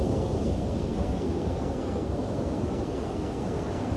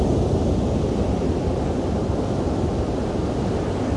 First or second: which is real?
second